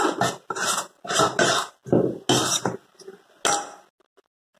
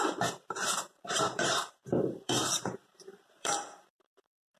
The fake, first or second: second